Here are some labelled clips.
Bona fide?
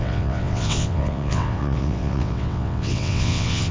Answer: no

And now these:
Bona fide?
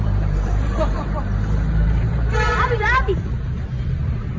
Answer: no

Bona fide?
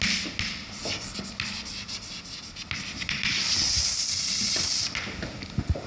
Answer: yes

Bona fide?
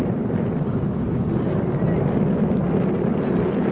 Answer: yes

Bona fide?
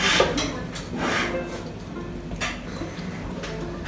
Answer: yes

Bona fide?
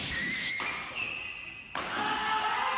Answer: yes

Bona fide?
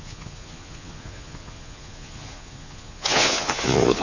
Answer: no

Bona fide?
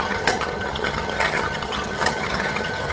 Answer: no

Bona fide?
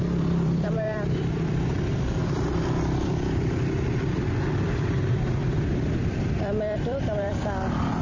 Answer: no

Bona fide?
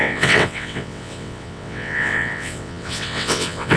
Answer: no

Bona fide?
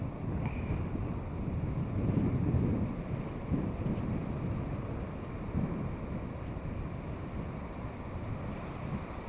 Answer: yes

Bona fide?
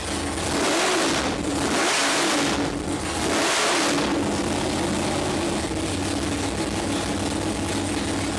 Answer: yes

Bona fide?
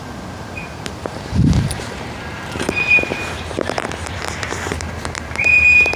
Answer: no